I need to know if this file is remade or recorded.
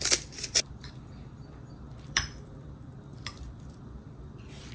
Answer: remade